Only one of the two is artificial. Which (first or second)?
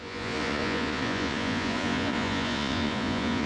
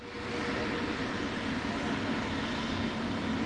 first